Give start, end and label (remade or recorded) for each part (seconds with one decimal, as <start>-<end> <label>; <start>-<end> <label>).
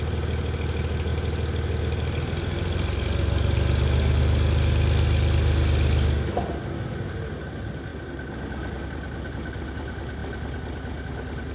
0.0-11.5 recorded